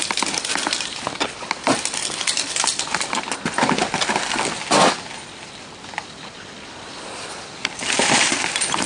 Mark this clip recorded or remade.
recorded